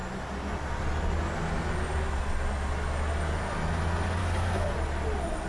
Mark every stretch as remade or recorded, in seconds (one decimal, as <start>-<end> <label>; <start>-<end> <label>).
0.0-4.2 recorded; 4.2-4.7 remade; 4.7-5.5 recorded